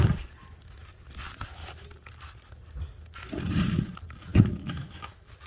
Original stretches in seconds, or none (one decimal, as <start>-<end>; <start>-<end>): 0.0-4.3